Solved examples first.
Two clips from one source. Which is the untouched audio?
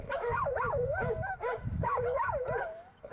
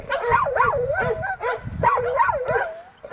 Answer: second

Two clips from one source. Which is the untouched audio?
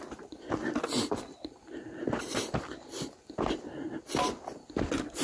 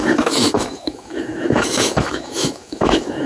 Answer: first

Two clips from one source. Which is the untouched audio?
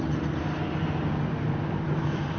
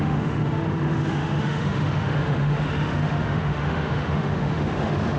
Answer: first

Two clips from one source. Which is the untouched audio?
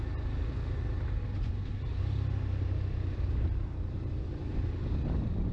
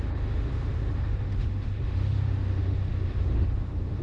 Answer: first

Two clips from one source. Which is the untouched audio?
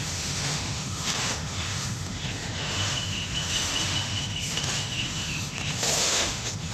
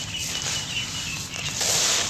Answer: second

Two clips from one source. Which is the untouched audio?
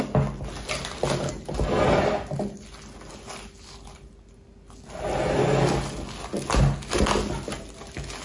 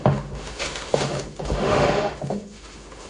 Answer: first